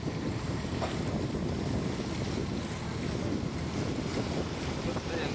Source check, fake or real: real